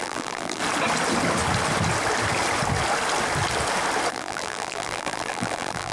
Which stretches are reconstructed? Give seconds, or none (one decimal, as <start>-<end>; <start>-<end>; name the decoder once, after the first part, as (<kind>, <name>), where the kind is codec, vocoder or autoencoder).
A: 0.0-0.6 (vocoder, BigVGAN v2); 4.1-5.9